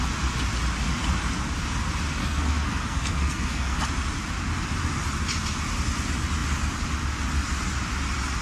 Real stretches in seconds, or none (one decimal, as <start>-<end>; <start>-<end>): 0.0-2.2; 3.8-8.4